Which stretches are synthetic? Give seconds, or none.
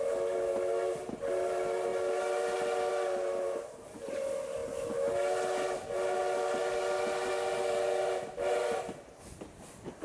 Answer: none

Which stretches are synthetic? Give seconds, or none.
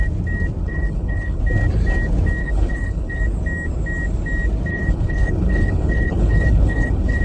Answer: 0.6-1.4 (codec, HILCodec); 2.4-3.2; 4.7-7.2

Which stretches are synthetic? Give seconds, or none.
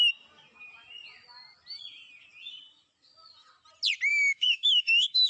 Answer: 4.1-5.3 (autoencoder, DAC-VAE)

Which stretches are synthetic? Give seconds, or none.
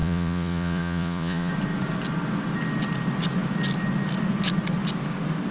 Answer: 0.0-1.5 (vocoder, Vocos)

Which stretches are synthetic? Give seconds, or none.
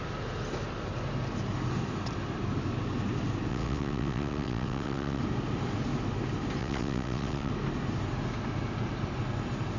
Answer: 3.5-5.2 (vocoder, WaveNeXt); 6.6-7.5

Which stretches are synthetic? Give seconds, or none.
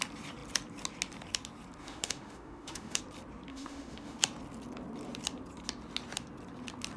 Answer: 1.8-3.0 (autoencoder, DAC-VAE); 3.5-4.2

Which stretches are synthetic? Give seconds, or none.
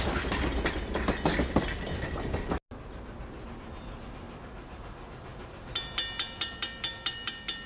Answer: none